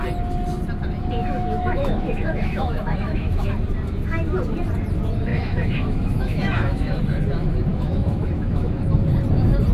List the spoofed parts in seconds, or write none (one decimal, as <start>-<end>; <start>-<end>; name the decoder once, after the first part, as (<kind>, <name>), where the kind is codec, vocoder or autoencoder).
1.2-3.5 (autoencoder, DAC-VAE); 5.3-7.0; 7.7-8.8